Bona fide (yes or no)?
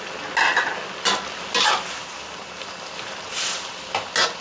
yes